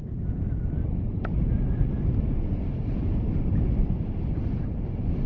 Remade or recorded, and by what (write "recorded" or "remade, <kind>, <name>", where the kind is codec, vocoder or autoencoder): recorded